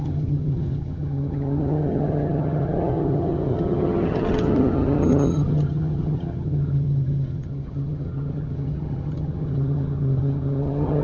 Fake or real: fake